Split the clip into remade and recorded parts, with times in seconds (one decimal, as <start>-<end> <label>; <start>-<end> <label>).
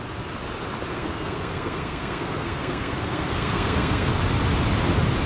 0.0-0.9 recorded; 0.9-4.1 remade; 4.1-5.3 recorded